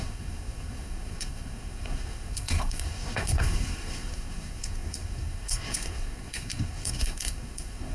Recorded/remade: remade